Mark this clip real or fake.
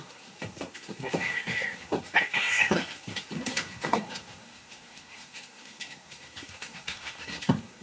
fake